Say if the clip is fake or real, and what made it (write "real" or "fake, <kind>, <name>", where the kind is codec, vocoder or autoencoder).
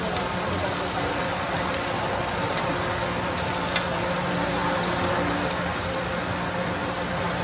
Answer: real